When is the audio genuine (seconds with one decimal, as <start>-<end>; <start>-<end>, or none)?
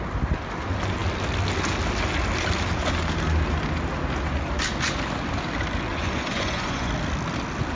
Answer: 0.0-5.9; 6.9-7.8